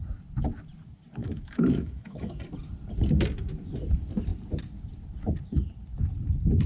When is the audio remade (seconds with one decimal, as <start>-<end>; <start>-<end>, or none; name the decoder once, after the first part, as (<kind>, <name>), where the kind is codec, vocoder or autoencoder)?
1.2-2.4 (autoencoder, DAC-VAE)